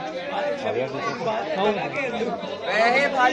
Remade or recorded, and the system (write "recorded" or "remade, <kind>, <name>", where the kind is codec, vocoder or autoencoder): recorded